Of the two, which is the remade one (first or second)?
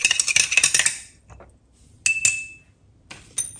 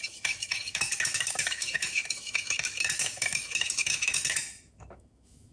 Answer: second